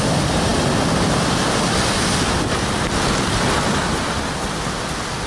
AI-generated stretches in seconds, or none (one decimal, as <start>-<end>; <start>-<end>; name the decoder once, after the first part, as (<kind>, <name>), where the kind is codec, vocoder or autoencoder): none